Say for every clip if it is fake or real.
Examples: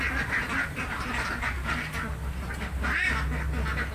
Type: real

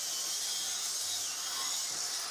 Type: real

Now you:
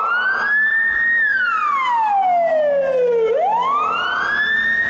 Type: real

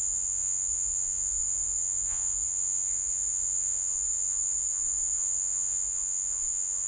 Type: fake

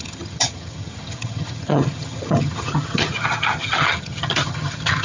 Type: fake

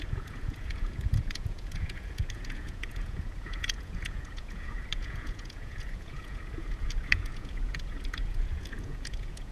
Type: fake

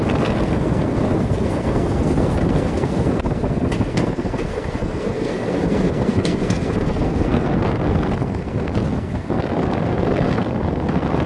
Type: fake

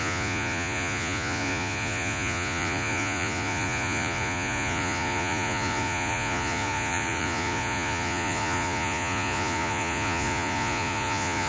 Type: fake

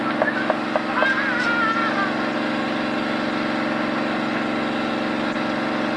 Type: real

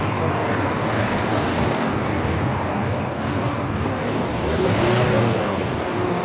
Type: fake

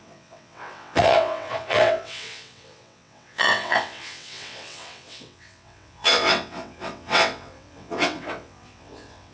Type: fake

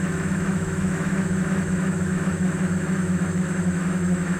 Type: fake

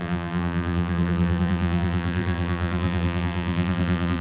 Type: fake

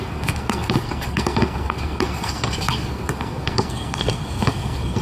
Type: fake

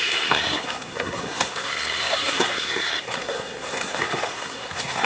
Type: fake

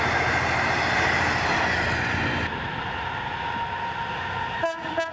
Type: real